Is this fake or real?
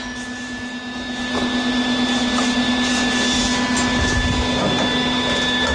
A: real